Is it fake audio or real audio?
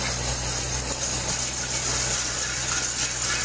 real